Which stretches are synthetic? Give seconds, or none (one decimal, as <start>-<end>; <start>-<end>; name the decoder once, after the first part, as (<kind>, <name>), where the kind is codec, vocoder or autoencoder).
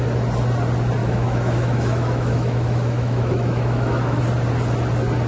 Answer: 1.0-4.2 (autoencoder, DAC-VAE)